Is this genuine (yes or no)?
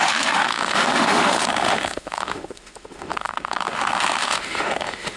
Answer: no